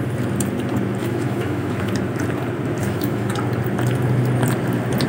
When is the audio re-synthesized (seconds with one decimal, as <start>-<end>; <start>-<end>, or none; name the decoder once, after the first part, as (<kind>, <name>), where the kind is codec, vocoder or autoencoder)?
1.0-1.9 (autoencoder, DAC-VAE); 2.8-3.3